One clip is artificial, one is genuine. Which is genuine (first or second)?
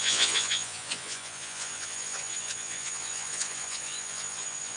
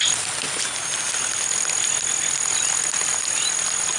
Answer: second